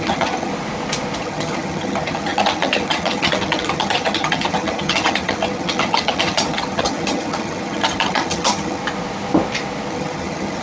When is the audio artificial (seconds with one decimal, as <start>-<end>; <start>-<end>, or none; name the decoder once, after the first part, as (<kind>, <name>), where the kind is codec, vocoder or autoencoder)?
0.0-0.5 (vocoder, HiFi-GAN); 1.2-8.8; 9.9-10.6